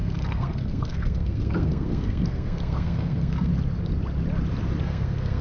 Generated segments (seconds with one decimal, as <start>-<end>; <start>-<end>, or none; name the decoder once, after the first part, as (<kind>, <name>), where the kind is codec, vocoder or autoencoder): 0.0-3.5 (codec, SNAC); 4.8-5.4